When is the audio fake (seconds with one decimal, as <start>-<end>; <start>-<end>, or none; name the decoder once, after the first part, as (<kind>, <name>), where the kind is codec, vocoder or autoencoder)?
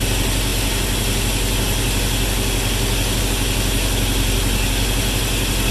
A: none